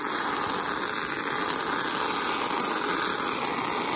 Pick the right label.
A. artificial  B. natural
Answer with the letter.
B